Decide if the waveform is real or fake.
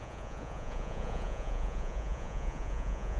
fake